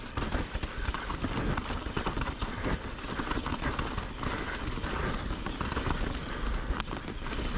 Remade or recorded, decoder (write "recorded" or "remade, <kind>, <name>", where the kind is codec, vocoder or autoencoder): recorded